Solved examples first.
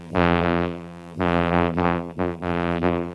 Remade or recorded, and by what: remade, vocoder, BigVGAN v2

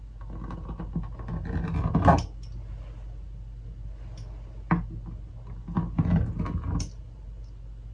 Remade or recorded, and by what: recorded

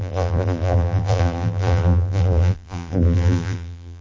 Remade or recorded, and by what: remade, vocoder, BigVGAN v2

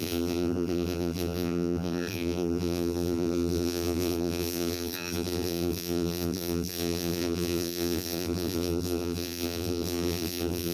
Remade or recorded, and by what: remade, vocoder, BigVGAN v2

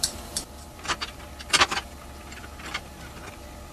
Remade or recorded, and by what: remade, vocoder, BigVGAN v2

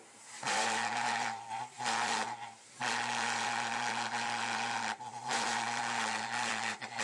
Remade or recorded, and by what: remade, vocoder, BigVGAN v2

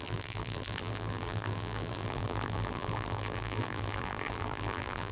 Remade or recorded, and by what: remade, vocoder, BigVGAN v2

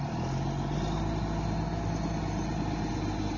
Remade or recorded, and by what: recorded